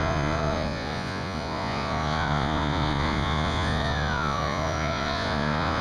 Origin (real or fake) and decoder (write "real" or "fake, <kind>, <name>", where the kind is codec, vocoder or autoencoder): fake, vocoder, Vocos